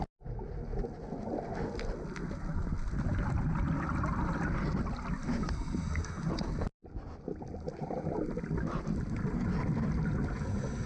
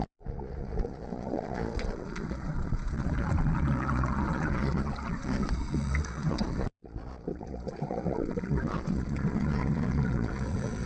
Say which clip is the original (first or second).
first